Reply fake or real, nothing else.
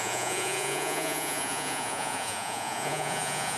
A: fake